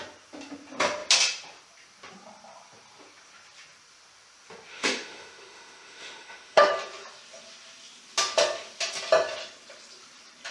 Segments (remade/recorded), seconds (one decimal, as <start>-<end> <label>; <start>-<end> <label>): 0.0-4.7 recorded; 4.7-6.7 remade; 6.7-10.5 recorded